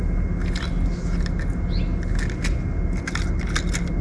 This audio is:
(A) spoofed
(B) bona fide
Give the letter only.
B